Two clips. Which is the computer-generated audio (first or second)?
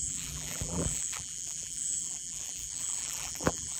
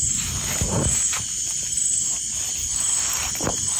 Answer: first